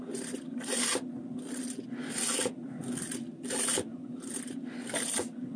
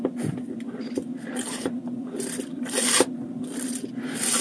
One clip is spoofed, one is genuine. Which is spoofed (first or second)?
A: second